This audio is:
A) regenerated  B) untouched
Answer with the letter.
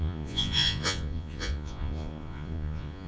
A